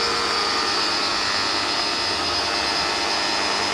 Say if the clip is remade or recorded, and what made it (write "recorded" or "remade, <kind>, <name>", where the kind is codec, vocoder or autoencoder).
recorded